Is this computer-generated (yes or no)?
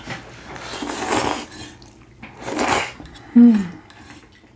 no